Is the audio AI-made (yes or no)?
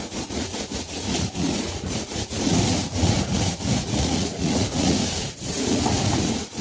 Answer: yes